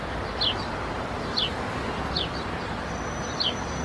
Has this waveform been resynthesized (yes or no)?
yes